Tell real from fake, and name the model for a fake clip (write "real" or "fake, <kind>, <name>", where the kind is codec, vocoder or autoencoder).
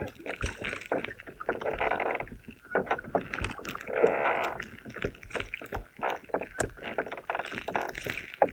real